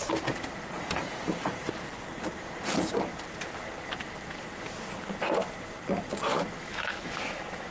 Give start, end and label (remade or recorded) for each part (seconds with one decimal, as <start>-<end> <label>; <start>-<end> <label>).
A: 0.0-6.3 recorded; 6.3-7.7 remade